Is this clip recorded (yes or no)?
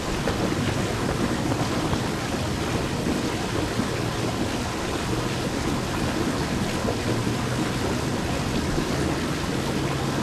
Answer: yes